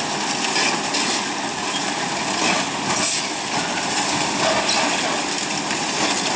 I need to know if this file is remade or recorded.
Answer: recorded